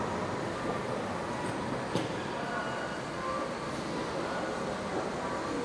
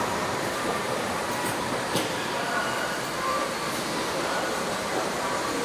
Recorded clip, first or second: first